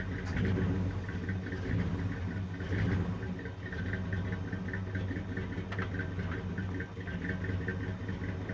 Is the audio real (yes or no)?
yes